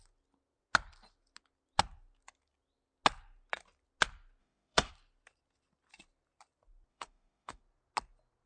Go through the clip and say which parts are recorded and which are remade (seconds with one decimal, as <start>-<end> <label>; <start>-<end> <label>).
0.0-4.4 recorded; 4.4-4.9 remade; 4.9-6.9 recorded; 6.9-7.6 remade; 7.6-8.5 recorded